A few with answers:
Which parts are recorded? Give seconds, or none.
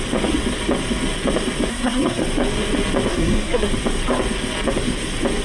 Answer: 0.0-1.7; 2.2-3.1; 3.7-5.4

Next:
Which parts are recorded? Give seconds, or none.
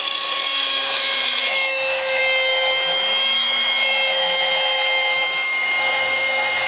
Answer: none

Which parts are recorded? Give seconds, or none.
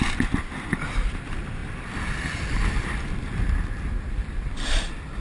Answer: 0.0-5.2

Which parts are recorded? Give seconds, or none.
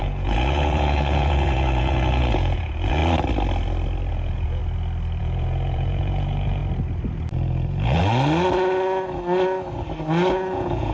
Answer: 3.0-4.1; 4.6-5.2; 6.6-7.3; 8.0-10.3